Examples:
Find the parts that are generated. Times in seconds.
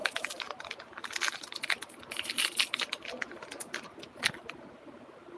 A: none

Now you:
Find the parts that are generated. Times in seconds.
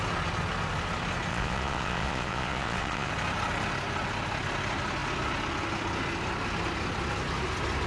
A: 1.3-3.1